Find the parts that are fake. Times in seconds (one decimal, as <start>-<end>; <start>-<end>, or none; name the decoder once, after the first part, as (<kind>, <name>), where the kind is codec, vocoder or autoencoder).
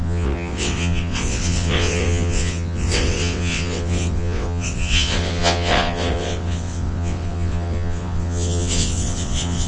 0.0-9.7 (vocoder, WaveNeXt)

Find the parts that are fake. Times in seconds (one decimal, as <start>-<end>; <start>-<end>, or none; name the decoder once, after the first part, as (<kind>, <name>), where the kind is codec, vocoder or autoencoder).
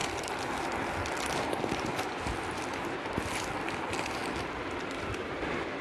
none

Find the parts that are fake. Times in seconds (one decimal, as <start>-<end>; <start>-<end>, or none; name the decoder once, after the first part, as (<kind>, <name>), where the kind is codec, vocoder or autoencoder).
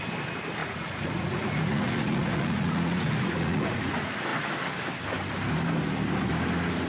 0.6-3.9 (vocoder, Vocos)